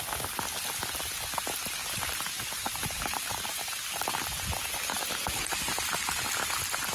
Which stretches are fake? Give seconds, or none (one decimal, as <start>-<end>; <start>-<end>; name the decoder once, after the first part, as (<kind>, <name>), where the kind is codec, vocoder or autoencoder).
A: 1.8-4.1 (vocoder, BigVGAN v2); 4.9-6.0